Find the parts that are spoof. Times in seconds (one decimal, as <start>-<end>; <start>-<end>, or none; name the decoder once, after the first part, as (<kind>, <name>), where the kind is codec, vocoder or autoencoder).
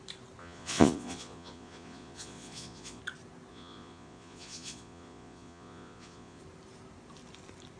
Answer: 0.4-3.0 (vocoder, Vocos); 3.5-6.4